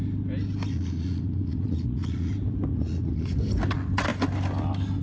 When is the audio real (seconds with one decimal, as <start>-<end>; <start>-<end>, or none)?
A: 0.0-0.7; 2.3-2.7; 3.4-5.0